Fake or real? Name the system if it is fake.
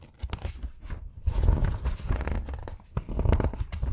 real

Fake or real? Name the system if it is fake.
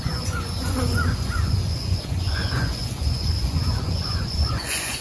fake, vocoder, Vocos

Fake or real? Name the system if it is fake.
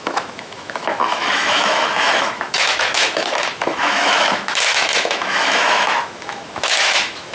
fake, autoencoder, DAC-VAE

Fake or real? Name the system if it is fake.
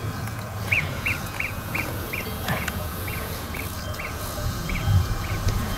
fake, vocoder, Vocos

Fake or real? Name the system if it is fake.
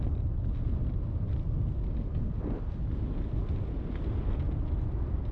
real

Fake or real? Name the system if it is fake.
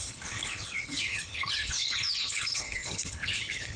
fake, codec, HILCodec